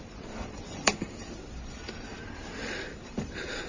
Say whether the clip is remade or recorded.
remade